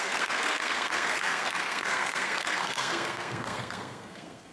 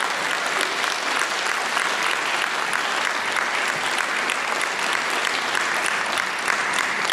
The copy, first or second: first